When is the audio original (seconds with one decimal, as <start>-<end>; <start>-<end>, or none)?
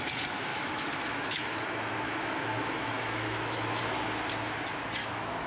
0.0-0.5; 3.8-5.0